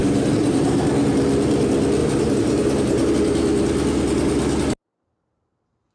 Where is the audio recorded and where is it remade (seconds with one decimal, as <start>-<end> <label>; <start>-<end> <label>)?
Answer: 0.0-0.9 remade; 0.9-2.0 recorded; 2.0-3.1 remade; 3.1-5.9 recorded